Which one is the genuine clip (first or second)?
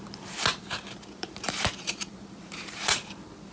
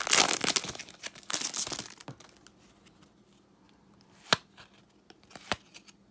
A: second